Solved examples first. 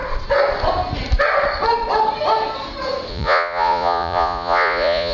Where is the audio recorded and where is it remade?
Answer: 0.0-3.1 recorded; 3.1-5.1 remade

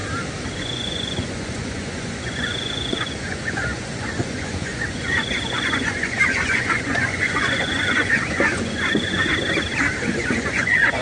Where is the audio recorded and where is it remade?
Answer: 0.0-0.6 recorded; 0.6-9.3 remade; 9.3-10.0 recorded; 10.0-11.0 remade